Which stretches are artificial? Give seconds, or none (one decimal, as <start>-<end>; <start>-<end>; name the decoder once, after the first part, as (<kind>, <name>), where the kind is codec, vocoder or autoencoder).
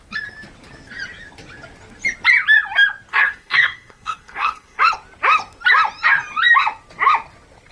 3.1-4.8 (codec, SNAC)